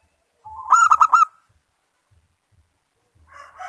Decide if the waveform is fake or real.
real